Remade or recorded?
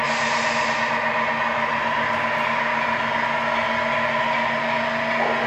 recorded